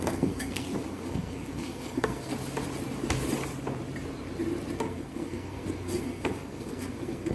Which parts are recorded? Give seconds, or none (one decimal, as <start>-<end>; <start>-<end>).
2.3-4.8